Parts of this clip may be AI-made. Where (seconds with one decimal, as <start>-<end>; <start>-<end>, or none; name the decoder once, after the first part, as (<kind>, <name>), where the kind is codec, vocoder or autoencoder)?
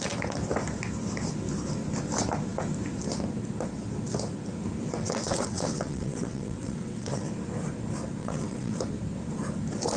5.0-7.3 (vocoder, WaveNeXt); 8.2-8.8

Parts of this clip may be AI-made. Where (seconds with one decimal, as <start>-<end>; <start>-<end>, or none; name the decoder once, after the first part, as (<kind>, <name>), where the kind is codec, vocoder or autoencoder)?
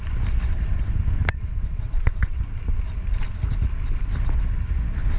1.2-2.4 (vocoder, WaveNeXt)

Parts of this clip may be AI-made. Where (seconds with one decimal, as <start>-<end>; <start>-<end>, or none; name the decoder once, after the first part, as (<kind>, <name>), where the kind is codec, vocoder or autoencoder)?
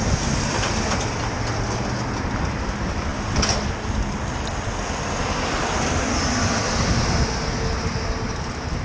none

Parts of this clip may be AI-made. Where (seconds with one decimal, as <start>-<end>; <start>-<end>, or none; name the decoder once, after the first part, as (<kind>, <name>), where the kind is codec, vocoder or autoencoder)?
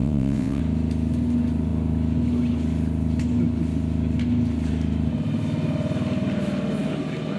0.0-0.6 (vocoder, WaveNeXt)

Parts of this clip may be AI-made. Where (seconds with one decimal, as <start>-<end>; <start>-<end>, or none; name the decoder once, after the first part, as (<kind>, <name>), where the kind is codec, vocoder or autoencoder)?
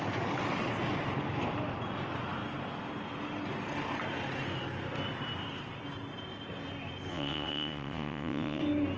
7.1-8.6 (vocoder, WaveNeXt)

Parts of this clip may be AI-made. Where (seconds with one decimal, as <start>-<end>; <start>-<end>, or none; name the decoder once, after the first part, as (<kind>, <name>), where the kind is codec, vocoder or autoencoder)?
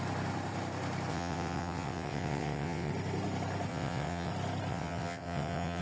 1.1-2.9 (vocoder, WaveNeXt); 3.7-4.3; 4.7-5.8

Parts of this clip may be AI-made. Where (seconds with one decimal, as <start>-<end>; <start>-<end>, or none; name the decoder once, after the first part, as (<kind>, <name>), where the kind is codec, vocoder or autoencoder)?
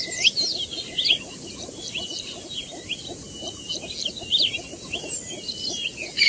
none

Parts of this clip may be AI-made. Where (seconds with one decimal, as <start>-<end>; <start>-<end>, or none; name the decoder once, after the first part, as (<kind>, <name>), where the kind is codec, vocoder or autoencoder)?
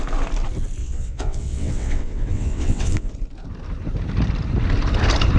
0.8-3.1 (vocoder, WaveNeXt)